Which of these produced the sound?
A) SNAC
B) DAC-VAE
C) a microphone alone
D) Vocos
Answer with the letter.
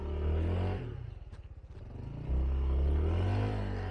C